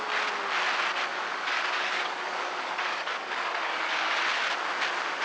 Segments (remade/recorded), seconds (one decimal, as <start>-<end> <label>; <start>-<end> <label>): 0.0-1.1 recorded; 1.1-4.2 remade; 4.2-5.2 recorded